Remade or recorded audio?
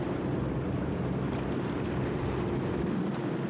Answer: remade